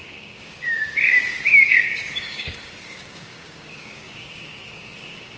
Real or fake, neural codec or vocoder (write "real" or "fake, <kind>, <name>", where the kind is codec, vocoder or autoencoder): fake, codec, DAC